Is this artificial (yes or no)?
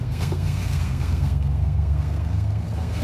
yes